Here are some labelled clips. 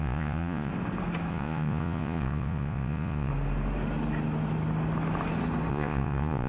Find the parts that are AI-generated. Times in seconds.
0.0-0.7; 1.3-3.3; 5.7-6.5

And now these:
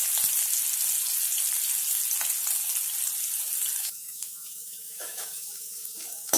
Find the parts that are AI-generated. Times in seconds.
3.8-6.4

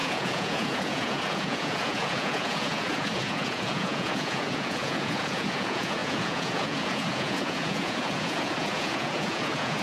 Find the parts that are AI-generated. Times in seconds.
0.0-9.8

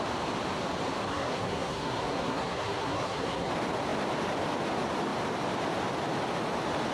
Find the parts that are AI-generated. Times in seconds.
1.1-3.5

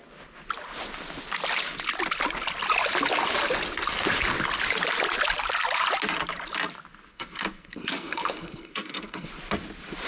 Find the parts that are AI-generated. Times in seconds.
7.1-9.3

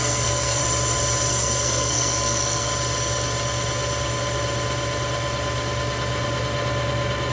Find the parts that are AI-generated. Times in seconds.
0.0-0.6; 1.3-2.7

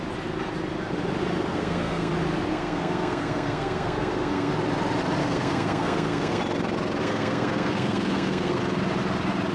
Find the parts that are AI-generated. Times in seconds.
1.5-2.1; 2.5-4.5; 5.2-6.4; 7.0-8.6

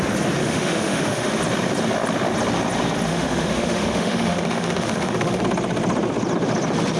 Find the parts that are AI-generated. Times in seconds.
0.4-1.3; 3.1-5.4